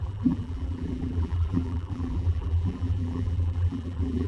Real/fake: fake